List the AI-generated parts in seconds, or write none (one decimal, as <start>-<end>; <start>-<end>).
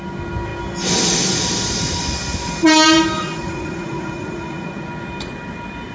3.2-4.9